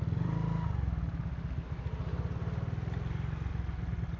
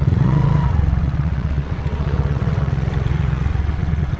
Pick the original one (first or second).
first